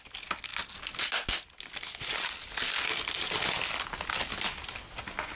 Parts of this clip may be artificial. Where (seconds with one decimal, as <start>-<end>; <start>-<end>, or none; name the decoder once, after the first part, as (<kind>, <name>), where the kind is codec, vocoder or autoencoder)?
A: none